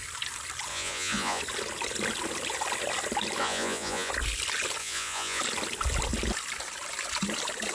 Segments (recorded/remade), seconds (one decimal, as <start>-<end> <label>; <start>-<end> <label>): 0.0-0.7 recorded; 0.7-1.4 remade; 1.4-3.4 recorded; 3.4-4.1 remade; 4.1-4.8 recorded; 4.8-5.4 remade; 5.4-7.7 recorded